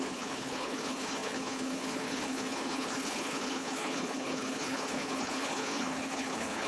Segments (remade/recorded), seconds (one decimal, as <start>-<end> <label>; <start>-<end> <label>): 0.0-6.7 remade